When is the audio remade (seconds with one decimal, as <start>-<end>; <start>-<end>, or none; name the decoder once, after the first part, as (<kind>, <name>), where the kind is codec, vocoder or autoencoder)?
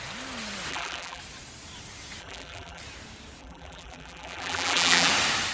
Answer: 0.7-1.2 (vocoder, BigVGAN v2); 2.2-2.8; 3.4-5.1